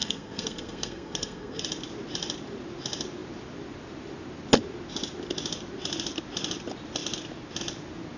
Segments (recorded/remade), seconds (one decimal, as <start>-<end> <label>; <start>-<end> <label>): 0.0-1.6 remade; 1.6-8.2 recorded